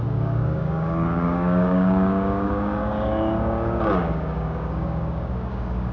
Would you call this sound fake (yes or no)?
yes